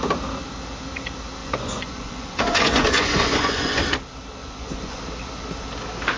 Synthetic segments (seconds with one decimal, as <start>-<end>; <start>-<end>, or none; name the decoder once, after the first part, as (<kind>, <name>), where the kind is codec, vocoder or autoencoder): 1.4-3.8 (vocoder, Vocos); 4.4-5.0